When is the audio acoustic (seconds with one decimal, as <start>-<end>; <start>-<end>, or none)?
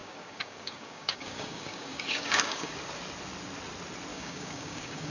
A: 2.7-4.1